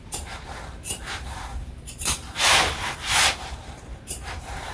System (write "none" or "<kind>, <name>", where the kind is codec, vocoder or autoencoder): vocoder, BigVGAN v2